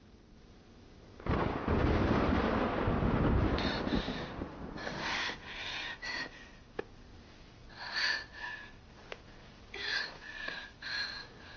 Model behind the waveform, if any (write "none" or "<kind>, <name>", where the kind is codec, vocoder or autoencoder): none